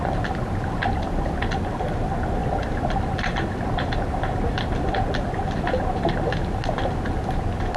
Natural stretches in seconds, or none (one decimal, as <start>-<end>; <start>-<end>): 0.0-2.4; 4.9-7.8